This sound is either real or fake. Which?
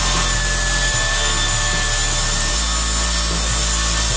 real